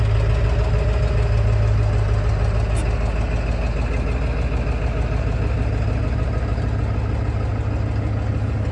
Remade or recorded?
recorded